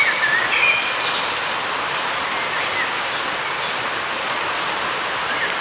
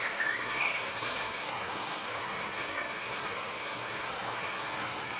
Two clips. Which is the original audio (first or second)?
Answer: first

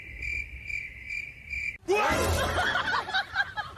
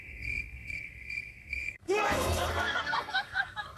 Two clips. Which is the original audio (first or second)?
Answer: first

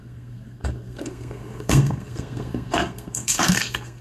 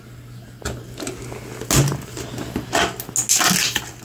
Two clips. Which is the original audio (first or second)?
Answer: second